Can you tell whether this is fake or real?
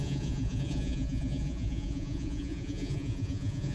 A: fake